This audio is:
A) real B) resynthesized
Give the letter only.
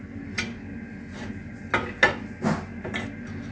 A